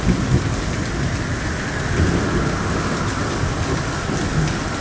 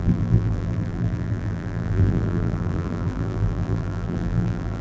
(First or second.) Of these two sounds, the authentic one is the first